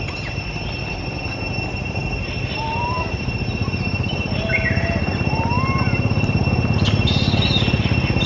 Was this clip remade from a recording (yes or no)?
no